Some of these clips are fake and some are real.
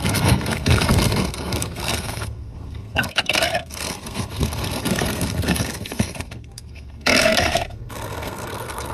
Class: fake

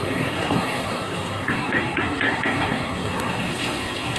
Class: fake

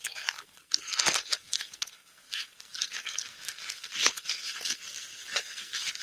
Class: fake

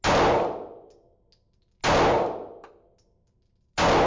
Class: real